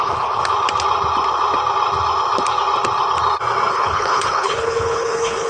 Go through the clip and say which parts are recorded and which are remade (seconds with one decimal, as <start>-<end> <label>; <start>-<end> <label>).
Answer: 0.0-0.4 remade; 0.4-3.7 recorded; 3.7-5.5 remade